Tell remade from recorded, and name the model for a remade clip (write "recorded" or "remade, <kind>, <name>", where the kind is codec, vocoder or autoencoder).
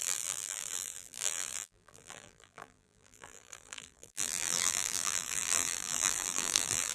remade, vocoder, BigVGAN v2